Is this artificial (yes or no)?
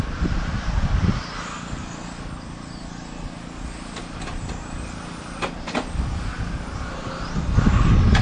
no